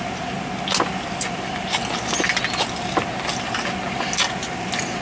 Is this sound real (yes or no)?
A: yes